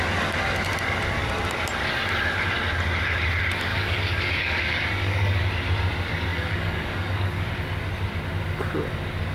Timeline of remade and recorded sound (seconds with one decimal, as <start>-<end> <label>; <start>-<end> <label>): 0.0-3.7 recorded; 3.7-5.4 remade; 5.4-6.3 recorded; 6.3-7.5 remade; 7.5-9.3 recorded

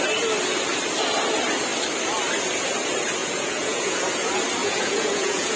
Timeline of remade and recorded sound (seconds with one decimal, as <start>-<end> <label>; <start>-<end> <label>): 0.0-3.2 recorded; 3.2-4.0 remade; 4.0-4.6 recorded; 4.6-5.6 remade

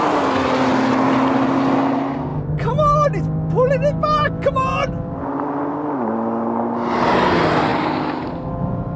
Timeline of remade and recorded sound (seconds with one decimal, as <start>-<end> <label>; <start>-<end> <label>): 0.0-9.0 recorded